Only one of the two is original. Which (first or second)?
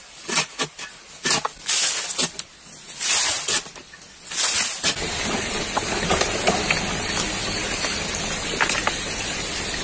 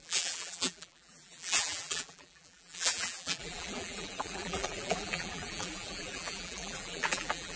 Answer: first